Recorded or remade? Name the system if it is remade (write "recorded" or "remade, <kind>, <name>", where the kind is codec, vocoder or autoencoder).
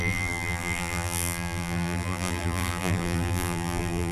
remade, vocoder, BigVGAN v2